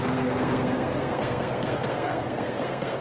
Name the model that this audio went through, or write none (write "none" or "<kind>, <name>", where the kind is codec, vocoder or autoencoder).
codec, SNAC